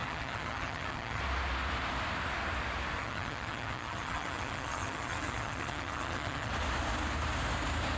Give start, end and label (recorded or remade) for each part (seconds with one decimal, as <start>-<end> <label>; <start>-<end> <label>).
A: 0.0-1.2 remade; 1.2-3.0 recorded; 3.0-6.5 remade; 6.5-8.0 recorded